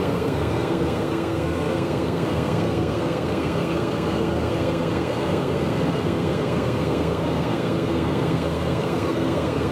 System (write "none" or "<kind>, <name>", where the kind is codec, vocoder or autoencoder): codec, SNAC